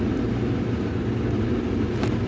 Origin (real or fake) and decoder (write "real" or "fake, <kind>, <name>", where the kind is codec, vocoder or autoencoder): real